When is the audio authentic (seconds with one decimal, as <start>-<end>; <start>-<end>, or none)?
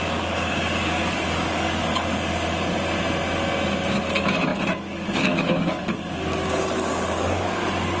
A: 1.9-4.1